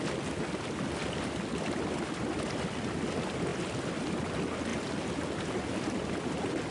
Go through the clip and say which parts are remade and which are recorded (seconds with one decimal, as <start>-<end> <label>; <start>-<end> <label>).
0.0-6.7 recorded